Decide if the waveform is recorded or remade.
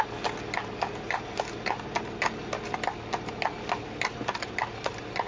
recorded